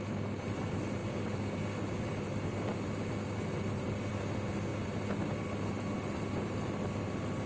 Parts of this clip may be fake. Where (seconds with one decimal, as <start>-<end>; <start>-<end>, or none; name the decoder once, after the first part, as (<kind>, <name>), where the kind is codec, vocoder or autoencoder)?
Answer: none